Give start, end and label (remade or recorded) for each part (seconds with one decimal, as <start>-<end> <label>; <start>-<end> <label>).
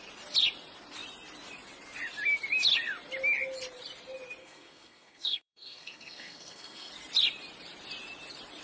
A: 0.0-4.4 recorded; 4.4-6.9 remade; 6.9-8.6 recorded